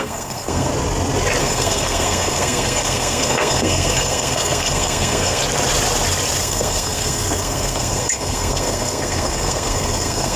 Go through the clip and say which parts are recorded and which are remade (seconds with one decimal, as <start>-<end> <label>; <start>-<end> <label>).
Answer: 0.0-0.7 remade; 0.7-1.4 recorded; 1.4-5.4 remade; 5.4-6.4 recorded; 6.4-10.4 remade